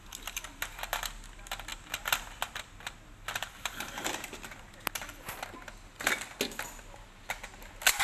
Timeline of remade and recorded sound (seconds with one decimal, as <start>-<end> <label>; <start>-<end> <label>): 0.0-8.0 recorded